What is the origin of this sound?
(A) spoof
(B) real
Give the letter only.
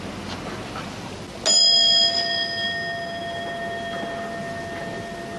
B